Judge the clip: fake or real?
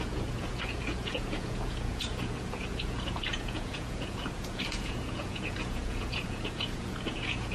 fake